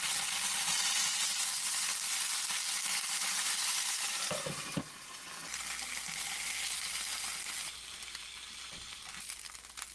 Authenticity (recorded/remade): recorded